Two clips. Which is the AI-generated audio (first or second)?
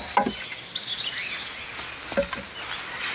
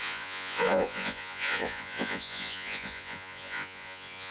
second